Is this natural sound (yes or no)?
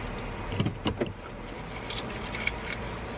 yes